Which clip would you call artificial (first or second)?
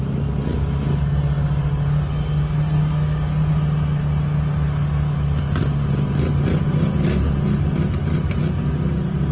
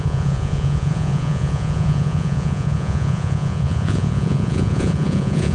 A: second